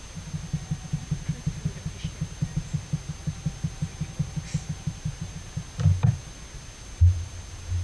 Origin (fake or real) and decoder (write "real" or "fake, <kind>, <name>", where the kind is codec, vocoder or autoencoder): real